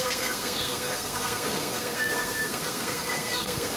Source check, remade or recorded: remade